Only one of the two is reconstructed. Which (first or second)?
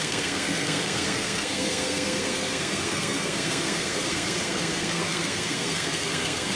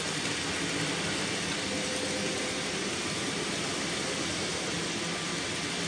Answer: first